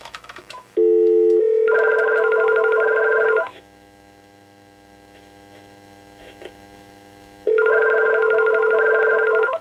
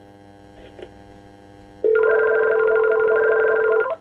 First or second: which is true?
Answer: second